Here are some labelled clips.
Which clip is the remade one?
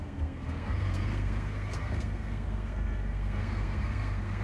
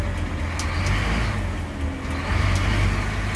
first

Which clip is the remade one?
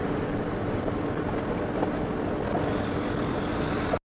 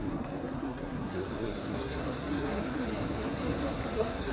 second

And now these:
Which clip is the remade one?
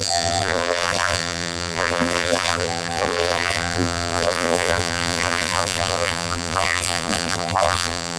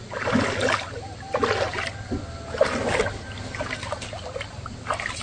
first